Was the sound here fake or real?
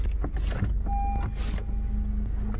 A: real